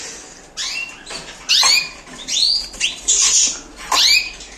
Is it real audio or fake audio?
real